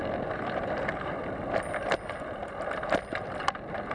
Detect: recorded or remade recorded